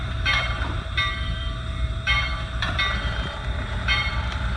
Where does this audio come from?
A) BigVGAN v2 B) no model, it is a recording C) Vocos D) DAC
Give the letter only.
A